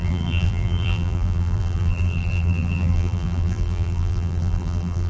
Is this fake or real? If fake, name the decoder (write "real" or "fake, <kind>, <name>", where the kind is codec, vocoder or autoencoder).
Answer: fake, vocoder, BigVGAN v2